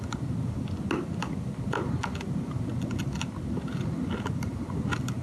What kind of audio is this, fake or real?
real